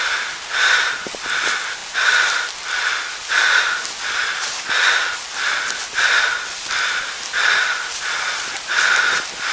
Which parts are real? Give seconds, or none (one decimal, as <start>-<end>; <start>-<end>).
0.0-9.5